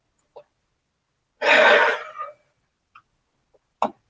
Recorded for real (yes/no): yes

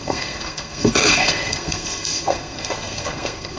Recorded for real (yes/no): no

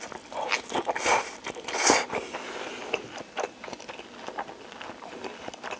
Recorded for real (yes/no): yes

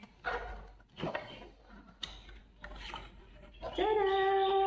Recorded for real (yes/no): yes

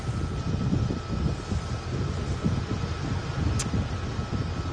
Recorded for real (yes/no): yes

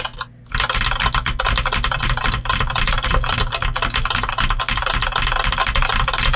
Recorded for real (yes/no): yes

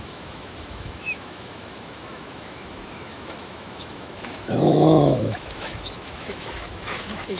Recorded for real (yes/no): no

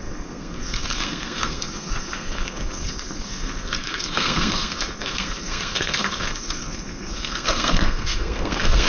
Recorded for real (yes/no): no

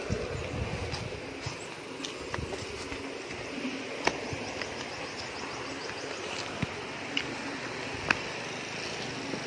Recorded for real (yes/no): yes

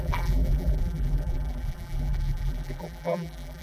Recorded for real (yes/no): no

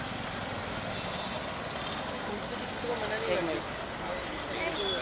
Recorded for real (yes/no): yes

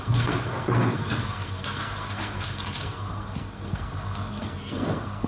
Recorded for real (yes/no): no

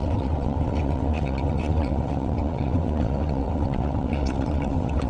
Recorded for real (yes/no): no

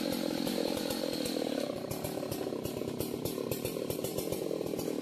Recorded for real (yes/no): no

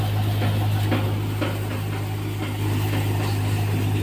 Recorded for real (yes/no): yes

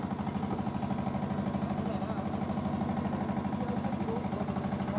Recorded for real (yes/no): yes